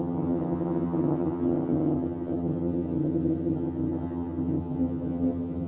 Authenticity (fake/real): fake